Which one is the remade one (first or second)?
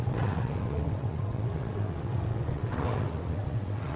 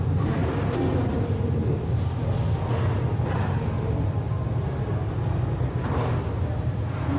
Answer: first